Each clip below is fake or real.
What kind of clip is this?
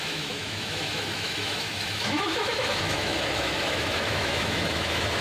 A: fake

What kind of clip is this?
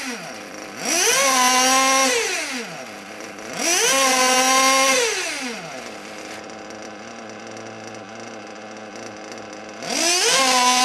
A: real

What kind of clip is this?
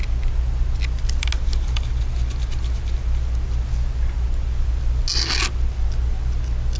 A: real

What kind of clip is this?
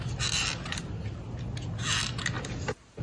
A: real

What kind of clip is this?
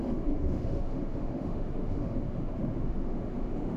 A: fake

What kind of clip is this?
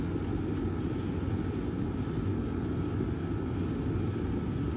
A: real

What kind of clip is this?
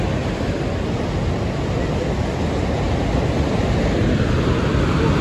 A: real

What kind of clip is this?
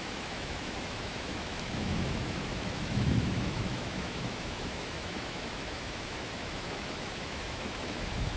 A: fake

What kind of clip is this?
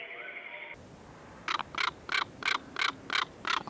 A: real